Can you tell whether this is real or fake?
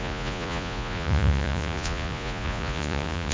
fake